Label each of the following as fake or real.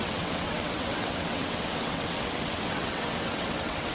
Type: fake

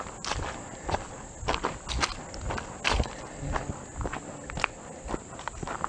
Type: real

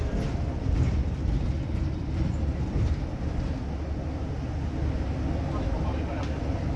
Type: real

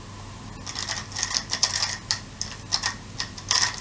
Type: real